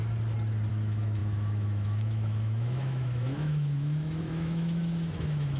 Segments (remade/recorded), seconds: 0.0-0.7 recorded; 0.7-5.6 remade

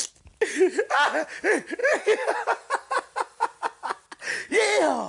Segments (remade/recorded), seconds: 0.0-5.1 recorded